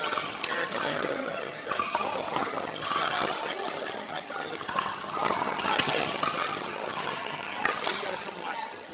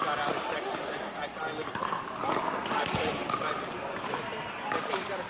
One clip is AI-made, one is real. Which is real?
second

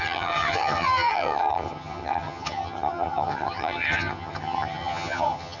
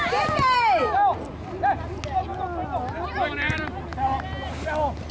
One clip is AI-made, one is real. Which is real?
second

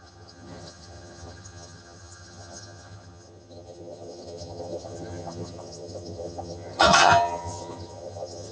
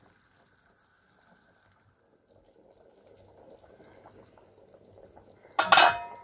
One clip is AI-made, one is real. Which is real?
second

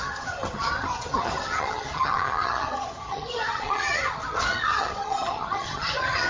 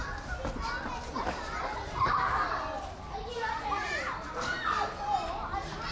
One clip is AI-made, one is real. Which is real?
second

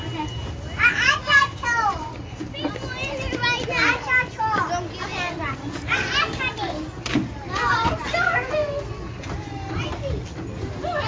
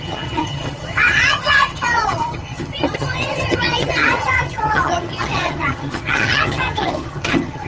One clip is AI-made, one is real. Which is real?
first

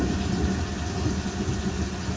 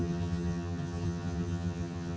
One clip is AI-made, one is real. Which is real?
first